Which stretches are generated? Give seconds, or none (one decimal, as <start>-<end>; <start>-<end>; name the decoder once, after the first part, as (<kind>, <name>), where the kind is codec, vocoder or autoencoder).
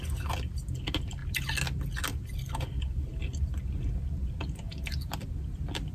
none